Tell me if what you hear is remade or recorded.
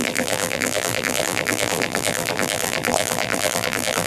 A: remade